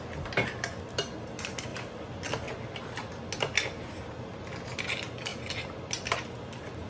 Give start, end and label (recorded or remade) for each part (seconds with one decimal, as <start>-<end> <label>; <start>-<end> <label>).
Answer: 0.0-6.9 recorded